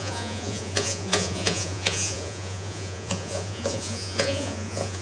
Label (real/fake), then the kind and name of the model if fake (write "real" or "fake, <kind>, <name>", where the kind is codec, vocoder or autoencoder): fake, vocoder, Vocos